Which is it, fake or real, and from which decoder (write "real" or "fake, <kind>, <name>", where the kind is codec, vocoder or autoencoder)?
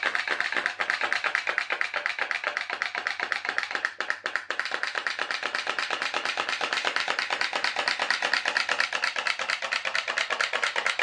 real